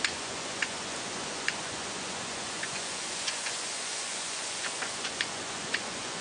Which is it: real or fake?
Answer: fake